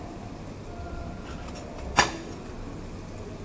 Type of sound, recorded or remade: recorded